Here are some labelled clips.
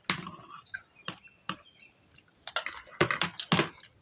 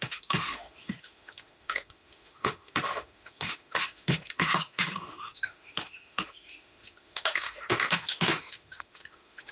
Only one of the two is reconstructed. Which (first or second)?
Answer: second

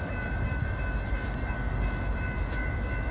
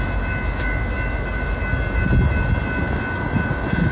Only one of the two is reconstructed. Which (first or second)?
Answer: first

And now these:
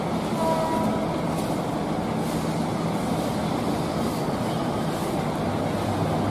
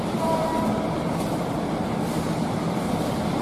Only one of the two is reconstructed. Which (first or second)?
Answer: second